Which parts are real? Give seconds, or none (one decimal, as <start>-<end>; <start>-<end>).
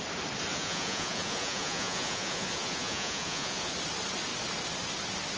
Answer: 0.0-0.5; 3.7-5.4